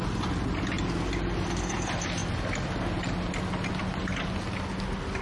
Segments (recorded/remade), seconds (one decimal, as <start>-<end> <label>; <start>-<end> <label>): 0.0-5.2 recorded